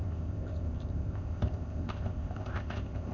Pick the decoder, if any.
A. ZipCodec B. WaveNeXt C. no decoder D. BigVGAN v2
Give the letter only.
A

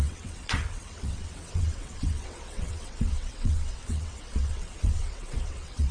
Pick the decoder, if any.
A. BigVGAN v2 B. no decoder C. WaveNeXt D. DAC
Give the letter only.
C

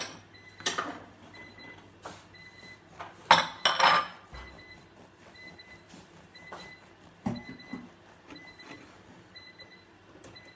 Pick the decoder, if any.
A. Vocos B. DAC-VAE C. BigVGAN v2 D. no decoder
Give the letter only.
D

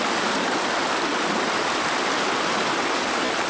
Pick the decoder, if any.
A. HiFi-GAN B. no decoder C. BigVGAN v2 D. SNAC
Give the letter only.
B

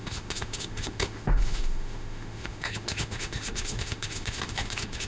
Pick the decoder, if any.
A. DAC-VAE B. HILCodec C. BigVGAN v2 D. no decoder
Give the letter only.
A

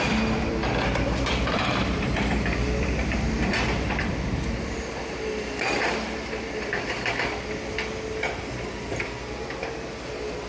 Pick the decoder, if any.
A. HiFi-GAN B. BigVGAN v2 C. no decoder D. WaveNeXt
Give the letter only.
B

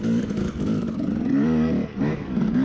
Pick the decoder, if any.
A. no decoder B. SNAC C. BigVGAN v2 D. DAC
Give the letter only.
D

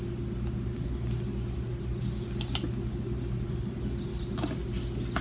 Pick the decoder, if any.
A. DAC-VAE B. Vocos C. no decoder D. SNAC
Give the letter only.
C